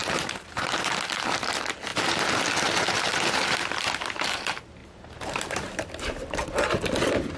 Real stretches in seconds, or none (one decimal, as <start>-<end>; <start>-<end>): 0.6-4.8; 5.9-7.4